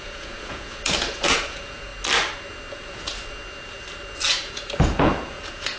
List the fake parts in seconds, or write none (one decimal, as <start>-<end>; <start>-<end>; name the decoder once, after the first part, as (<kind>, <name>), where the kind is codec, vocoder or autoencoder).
0.0-1.9 (vocoder, Vocos); 2.7-3.1; 4.3-5.8

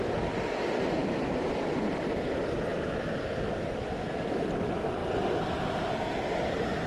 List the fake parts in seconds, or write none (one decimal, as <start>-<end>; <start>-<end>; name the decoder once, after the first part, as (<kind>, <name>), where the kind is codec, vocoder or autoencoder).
none

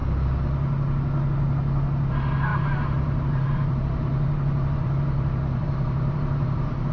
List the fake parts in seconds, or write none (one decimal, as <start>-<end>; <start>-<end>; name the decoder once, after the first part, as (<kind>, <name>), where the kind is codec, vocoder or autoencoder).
2.5-6.9 (vocoder, BigVGAN v2)